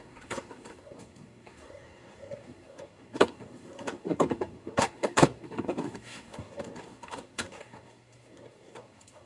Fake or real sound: fake